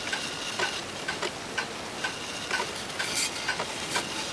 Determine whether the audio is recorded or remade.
recorded